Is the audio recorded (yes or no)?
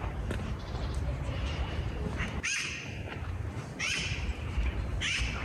no